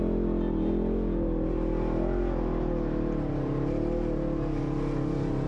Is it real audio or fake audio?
real